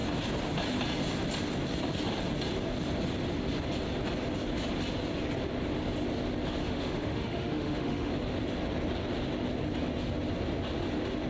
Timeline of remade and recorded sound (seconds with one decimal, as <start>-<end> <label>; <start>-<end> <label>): 0.0-6.6 recorded; 6.6-8.1 remade; 8.1-11.3 recorded